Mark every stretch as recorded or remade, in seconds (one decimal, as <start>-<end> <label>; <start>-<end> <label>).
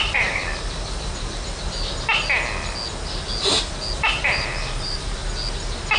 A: 0.0-0.4 remade; 0.4-4.0 recorded; 4.0-5.2 remade; 5.2-6.0 recorded